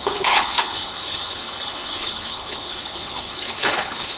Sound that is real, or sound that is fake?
fake